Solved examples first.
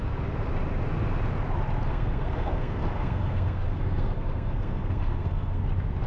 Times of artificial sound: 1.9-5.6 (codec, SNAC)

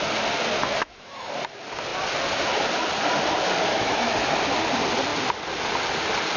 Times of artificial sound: 0.6-1.3 (autoencoder, DAC-VAE); 3.7-4.3